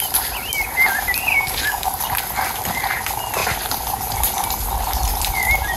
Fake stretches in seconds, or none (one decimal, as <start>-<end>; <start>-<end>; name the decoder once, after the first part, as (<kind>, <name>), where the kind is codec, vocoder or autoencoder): 1.3-2.0 (codec, DAC)